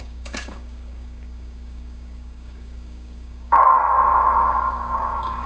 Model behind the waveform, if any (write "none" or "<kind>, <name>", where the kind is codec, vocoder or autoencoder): codec, DAC